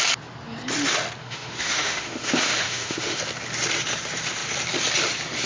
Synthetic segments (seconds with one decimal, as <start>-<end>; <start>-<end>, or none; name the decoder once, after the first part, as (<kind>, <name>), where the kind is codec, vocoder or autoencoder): 1.2-3.2 (autoencoder, DAC-VAE)